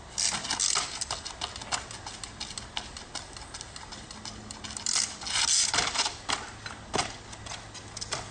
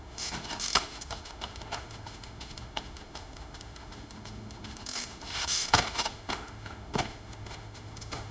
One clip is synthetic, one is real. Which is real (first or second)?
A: first